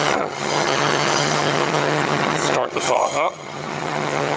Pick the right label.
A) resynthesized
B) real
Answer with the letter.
A